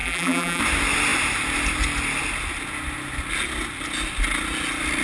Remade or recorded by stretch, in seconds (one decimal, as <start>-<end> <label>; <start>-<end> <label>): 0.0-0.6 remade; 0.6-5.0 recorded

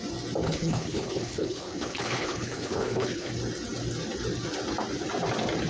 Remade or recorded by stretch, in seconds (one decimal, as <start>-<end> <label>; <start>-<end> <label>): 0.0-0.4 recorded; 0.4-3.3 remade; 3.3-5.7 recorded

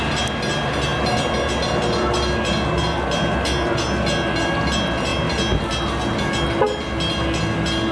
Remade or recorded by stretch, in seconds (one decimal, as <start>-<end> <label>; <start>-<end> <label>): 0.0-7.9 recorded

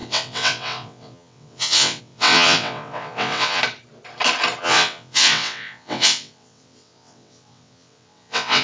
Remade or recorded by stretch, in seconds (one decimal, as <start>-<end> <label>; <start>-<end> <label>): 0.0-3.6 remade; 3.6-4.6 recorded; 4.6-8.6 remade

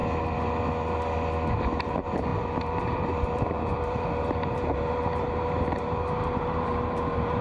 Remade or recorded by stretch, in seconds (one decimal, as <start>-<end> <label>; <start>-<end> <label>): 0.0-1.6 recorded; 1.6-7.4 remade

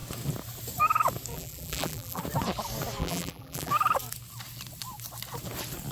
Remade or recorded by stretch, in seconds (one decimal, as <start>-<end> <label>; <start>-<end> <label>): 0.0-1.3 recorded; 1.3-2.2 remade; 2.2-3.0 recorded; 3.0-3.7 remade; 3.7-5.9 recorded